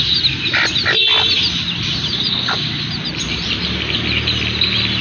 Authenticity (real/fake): real